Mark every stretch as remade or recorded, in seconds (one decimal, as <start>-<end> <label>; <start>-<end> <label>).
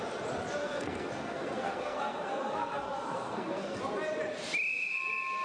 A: 0.0-0.6 recorded; 0.6-3.8 remade; 3.8-5.4 recorded